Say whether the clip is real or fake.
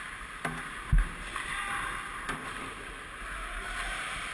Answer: real